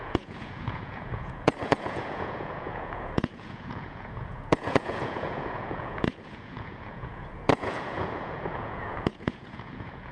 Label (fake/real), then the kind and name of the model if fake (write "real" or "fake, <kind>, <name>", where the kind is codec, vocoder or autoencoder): fake, vocoder, Vocos